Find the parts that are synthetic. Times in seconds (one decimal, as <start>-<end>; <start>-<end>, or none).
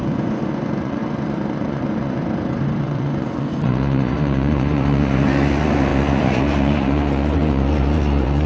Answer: 0.0-2.2; 2.8-8.5